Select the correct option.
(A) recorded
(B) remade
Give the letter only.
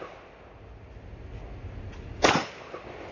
A